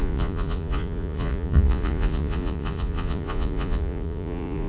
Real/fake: fake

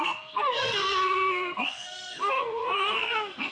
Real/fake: fake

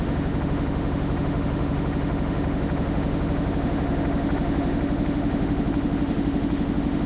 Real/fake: fake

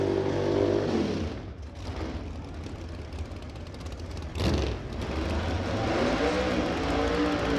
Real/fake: real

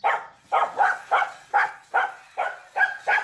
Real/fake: real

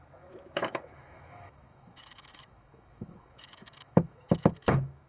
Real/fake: fake